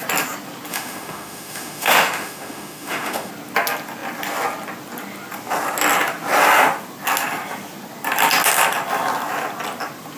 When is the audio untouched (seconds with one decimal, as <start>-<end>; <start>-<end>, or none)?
0.0-0.7; 3.3-10.2